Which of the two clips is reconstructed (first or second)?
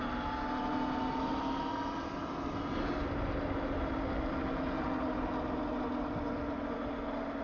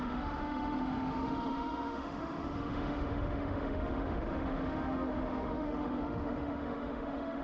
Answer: second